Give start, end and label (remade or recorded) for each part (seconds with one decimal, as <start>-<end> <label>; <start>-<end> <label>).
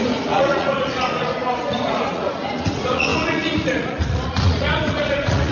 0.0-5.5 remade